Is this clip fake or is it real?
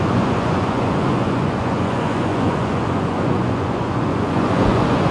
fake